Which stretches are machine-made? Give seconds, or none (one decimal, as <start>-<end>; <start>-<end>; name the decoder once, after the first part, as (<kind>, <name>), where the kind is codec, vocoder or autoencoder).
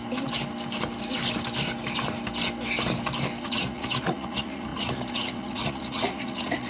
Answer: 3.4-6.7 (vocoder, Vocos)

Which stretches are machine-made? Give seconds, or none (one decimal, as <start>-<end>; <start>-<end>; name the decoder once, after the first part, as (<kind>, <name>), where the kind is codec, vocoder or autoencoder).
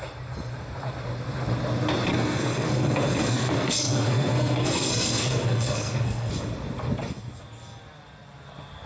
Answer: 2.1-6.3 (codec, SNAC)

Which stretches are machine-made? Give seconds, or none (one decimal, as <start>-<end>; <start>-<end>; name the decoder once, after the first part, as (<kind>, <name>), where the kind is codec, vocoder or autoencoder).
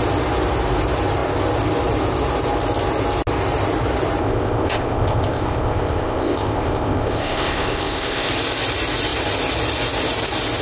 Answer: 4.2-8.3 (codec, ZipCodec)